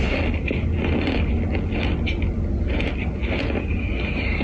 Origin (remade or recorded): recorded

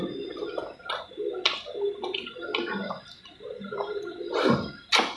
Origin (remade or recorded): recorded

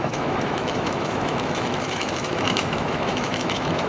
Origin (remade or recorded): remade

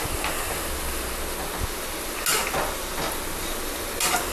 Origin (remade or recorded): recorded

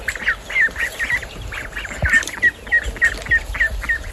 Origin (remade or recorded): recorded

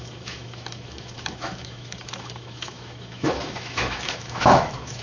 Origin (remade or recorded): remade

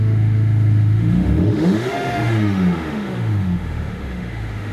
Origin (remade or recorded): remade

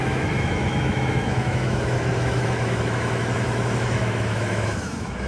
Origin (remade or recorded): remade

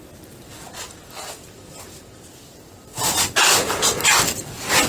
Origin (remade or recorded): recorded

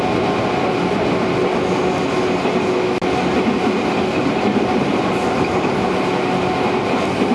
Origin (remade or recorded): recorded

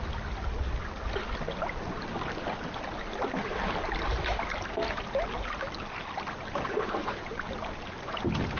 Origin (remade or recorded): recorded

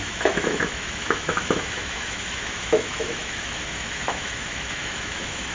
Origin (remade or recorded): remade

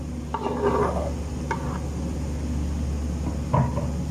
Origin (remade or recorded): recorded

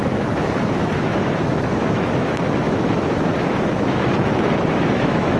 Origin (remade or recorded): remade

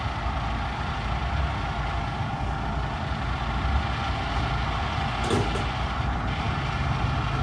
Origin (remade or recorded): recorded